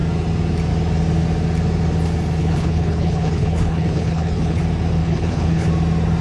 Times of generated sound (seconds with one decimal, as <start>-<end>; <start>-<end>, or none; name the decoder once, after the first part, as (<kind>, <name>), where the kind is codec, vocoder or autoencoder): 2.4-4.6 (codec, HILCodec); 5.0-5.7